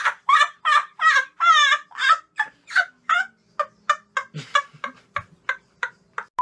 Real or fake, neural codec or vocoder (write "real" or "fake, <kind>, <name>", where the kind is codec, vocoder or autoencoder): real